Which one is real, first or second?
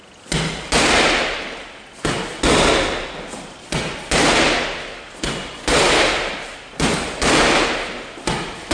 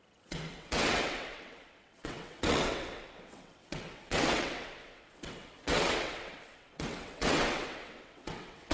first